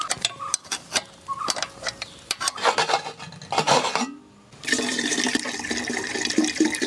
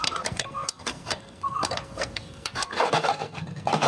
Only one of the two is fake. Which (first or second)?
second